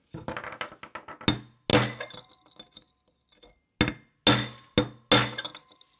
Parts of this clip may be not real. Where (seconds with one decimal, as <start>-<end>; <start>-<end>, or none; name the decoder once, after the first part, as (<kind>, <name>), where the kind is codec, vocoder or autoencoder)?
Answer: none